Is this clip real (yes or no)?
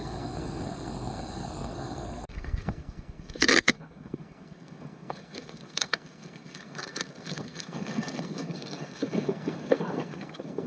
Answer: no